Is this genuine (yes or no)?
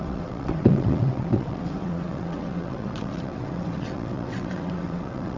no